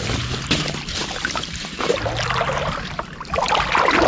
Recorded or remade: recorded